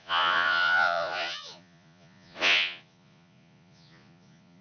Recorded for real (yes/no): no